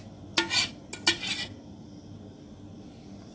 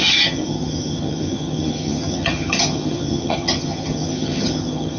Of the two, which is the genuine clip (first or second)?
first